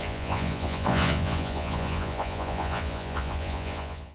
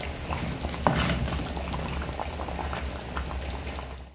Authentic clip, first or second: second